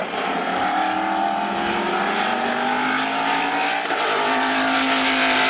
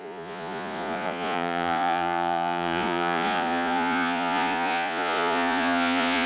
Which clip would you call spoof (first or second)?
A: second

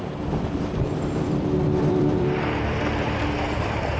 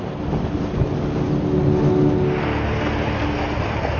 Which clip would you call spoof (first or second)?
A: first